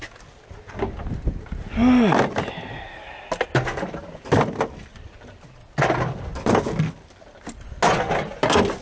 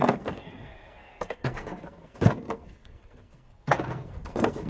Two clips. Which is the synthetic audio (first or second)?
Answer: second